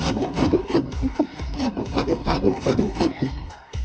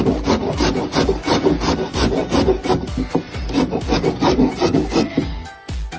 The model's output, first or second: first